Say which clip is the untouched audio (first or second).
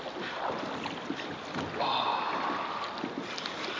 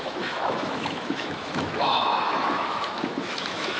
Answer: first